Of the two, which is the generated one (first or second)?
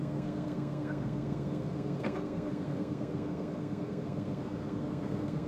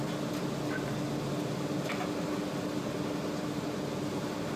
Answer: first